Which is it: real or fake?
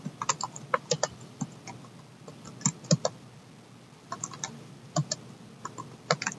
real